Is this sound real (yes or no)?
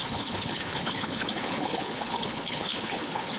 no